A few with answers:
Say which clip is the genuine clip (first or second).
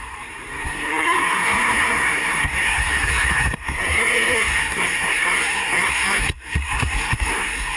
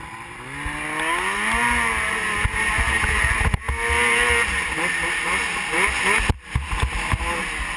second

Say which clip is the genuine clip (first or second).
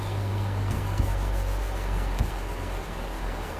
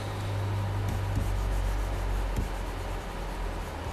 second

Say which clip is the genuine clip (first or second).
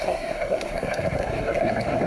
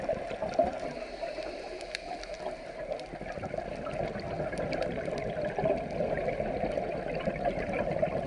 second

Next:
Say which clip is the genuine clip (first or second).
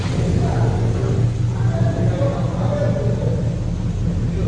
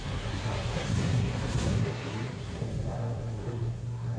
first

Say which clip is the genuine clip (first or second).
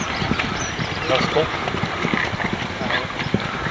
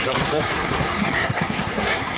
first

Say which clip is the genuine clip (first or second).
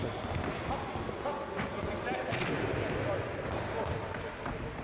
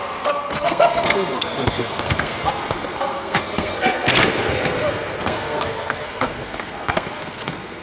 first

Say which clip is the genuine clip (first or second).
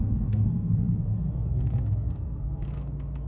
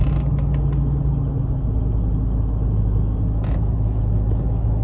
second